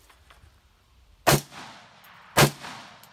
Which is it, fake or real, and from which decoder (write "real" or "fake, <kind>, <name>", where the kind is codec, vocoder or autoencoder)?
real